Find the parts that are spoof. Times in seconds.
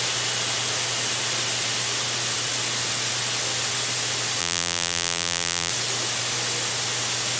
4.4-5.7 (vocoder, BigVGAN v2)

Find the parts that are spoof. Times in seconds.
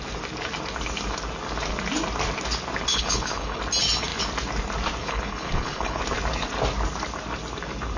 2.9-3.6 (codec, HILCodec); 5.0-6.0